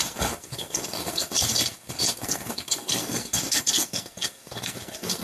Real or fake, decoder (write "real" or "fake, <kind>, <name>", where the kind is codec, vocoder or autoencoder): fake, codec, SNAC